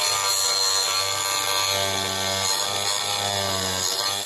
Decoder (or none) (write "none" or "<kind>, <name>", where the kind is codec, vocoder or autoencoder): none